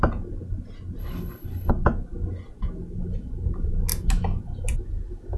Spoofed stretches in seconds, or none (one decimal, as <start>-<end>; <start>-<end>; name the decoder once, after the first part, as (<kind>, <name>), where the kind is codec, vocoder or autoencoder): 1.0-1.7 (codec, HILCodec)

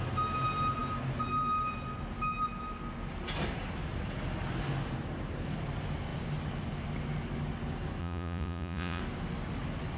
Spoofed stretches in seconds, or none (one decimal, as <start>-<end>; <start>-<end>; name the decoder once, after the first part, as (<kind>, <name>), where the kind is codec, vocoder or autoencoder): 8.0-9.0 (vocoder, Vocos)

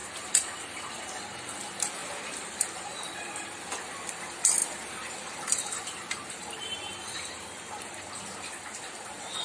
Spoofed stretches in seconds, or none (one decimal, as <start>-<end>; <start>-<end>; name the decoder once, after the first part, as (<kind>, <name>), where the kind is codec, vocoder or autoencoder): 0.0-1.2 (vocoder, BigVGAN v2); 2.0-3.7; 4.6-9.4

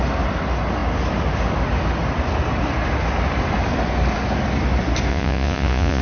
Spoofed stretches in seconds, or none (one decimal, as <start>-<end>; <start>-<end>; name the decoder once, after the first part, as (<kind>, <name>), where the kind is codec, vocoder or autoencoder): 5.1-6.0 (vocoder, Vocos)

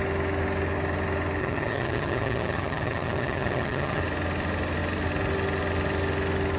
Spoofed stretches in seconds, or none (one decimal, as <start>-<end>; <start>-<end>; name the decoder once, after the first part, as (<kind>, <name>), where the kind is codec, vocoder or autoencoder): 1.4-4.0 (vocoder, HiFi-GAN)